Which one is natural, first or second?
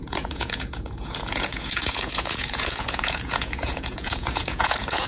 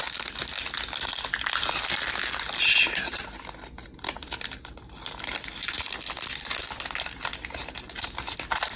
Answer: second